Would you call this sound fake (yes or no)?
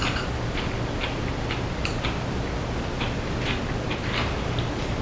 no